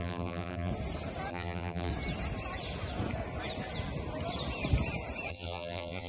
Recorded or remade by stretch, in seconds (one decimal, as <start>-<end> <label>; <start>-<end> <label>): 0.0-0.7 remade; 0.7-1.3 recorded; 1.3-1.9 remade; 1.9-5.3 recorded; 5.3-6.1 remade